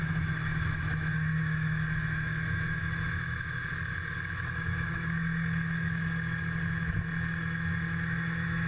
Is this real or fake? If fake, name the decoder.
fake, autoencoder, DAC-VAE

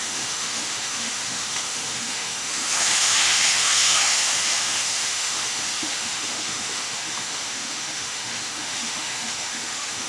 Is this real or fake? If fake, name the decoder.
fake, autoencoder, DAC-VAE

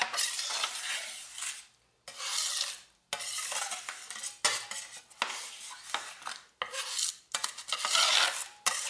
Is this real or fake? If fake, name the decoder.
real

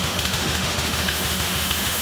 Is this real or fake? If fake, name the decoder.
fake, autoencoder, DAC-VAE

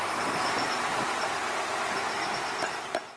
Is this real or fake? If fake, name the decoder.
real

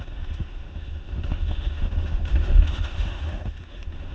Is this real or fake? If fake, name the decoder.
fake, autoencoder, DAC-VAE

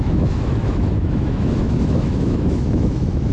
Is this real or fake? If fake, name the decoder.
fake, autoencoder, DAC-VAE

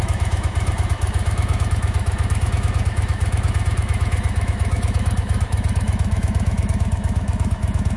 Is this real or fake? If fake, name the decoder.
fake, autoencoder, DAC-VAE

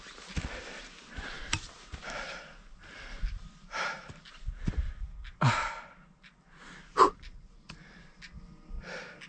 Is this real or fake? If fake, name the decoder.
real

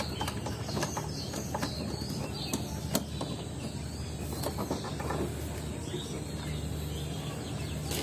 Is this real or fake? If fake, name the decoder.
real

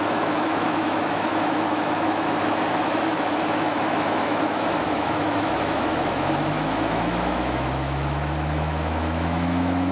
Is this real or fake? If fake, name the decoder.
fake, autoencoder, DAC-VAE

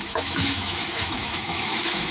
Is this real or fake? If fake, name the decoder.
fake, autoencoder, DAC-VAE